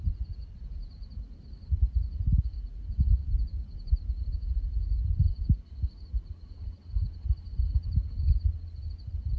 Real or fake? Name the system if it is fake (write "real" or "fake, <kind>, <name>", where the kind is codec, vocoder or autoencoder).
real